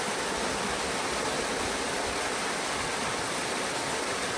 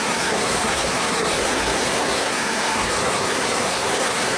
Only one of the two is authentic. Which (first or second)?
first